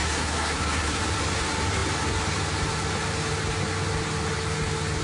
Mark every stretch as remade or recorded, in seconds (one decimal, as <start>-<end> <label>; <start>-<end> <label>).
0.0-1.0 remade; 1.0-5.0 recorded